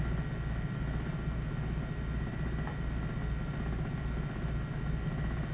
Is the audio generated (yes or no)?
no